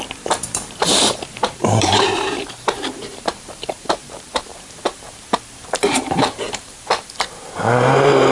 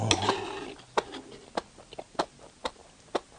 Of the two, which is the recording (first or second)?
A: second